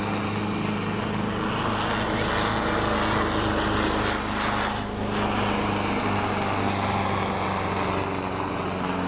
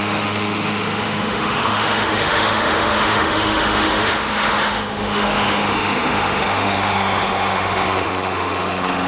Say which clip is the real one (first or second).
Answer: first